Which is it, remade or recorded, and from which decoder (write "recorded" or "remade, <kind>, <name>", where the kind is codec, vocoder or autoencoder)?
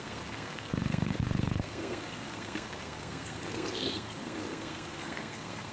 remade, codec, SNAC